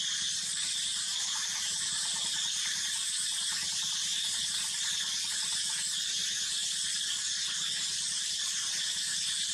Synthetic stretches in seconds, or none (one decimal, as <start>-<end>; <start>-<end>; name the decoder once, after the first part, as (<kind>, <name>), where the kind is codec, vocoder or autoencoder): 0.0-4.1 (vocoder, BigVGAN v2); 5.3-6.2; 7.5-9.5

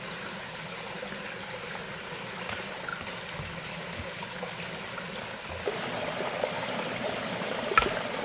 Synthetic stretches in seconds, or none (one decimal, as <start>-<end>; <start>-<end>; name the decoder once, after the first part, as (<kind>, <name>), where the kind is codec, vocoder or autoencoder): 2.9-3.5 (vocoder, BigVGAN v2)

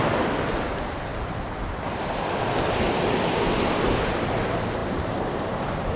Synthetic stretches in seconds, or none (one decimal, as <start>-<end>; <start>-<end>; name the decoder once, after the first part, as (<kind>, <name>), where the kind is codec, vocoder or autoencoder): 1.1-4.2 (vocoder, BigVGAN v2); 4.8-6.0

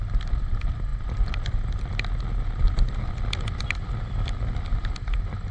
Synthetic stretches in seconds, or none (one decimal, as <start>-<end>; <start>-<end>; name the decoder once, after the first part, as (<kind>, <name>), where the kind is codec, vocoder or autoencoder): none

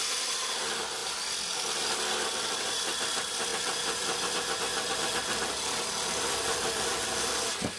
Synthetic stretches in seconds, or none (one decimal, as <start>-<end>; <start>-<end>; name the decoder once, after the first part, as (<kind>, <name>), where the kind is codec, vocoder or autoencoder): none